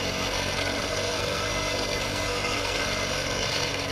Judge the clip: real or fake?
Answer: fake